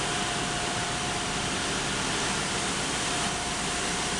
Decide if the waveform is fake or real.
fake